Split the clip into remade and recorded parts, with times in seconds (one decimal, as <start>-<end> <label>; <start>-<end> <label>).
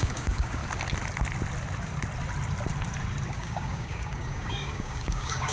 0.0-0.6 remade; 0.6-3.3 recorded; 3.3-5.5 remade